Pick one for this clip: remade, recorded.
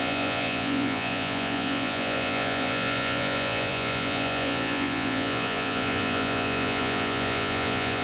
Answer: remade